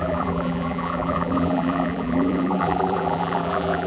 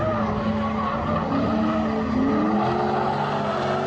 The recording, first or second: second